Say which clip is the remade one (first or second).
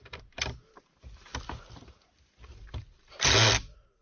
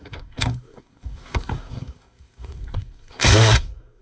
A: second